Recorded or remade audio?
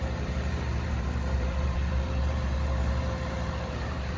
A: remade